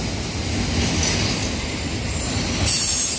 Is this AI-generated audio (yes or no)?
no